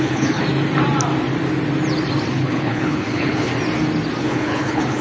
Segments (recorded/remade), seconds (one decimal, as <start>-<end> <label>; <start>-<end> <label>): 0.0-0.4 remade; 0.4-2.3 recorded; 2.3-3.5 remade; 3.5-4.2 recorded; 4.2-5.0 remade